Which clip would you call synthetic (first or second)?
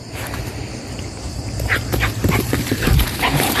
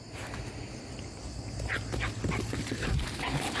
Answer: first